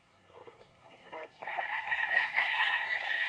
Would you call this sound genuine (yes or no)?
no